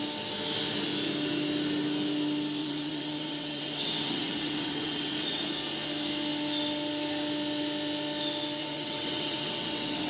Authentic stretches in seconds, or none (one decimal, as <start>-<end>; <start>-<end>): 0.0-2.6; 5.4-8.6